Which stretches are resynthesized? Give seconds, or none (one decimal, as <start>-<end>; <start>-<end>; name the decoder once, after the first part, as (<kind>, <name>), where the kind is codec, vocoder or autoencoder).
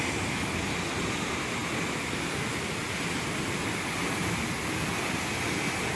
none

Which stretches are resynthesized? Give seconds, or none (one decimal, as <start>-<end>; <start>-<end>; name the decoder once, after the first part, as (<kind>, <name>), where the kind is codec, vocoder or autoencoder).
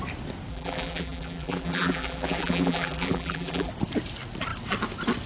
0.5-3.7 (vocoder, BigVGAN v2)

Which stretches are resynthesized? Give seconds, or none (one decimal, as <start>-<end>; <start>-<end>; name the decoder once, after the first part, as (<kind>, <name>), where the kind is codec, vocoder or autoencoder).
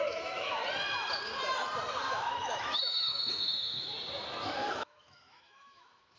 0.0-0.6 (autoencoder, DAC-VAE); 2.1-3.9; 4.7-6.2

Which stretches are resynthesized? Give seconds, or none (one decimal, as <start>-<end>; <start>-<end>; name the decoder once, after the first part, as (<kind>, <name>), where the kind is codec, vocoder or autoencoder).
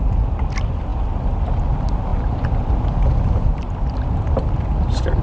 none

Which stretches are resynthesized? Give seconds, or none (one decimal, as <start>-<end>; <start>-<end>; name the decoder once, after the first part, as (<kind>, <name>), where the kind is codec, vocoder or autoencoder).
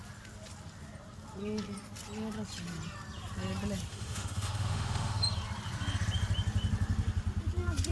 3.9-5.2 (autoencoder, DAC-VAE)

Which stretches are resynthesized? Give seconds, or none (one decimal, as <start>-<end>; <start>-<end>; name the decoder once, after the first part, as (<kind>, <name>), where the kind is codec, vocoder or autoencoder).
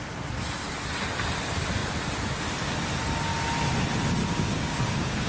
4.2-5.3 (codec, DAC)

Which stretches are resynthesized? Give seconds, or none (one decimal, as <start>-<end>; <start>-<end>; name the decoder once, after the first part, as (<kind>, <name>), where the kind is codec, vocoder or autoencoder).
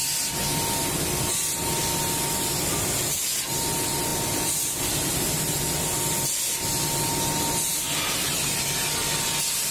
none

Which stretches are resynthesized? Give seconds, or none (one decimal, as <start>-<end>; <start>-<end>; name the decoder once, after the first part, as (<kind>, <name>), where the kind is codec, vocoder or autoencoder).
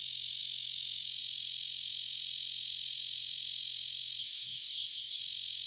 4.2-5.2 (codec, DAC)